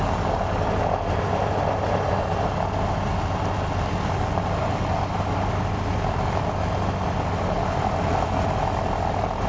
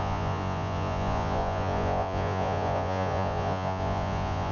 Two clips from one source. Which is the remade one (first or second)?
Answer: second